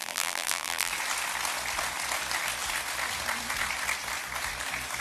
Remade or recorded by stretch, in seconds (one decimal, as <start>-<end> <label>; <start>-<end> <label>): 0.0-0.9 remade; 0.9-5.0 recorded